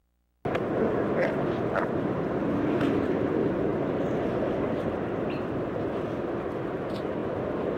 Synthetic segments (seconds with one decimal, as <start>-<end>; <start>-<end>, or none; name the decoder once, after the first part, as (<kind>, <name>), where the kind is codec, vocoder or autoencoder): 3.7-4.4 (vocoder, BigVGAN v2)